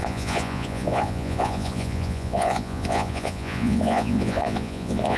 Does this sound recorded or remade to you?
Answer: remade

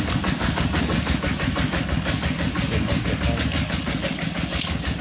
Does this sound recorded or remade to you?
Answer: remade